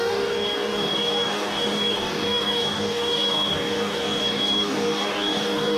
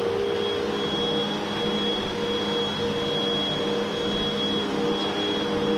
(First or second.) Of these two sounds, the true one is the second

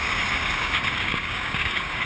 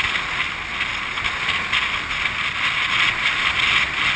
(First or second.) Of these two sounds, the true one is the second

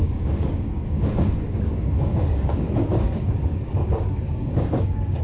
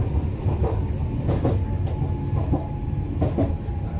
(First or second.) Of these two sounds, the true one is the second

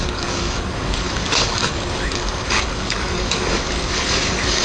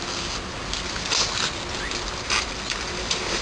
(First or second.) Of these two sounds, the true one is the second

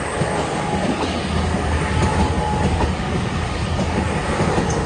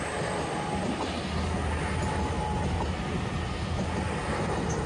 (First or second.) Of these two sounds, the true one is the second